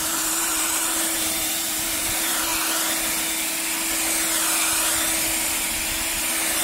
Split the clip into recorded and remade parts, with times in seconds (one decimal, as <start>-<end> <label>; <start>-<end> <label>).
0.0-2.5 remade; 2.5-6.6 recorded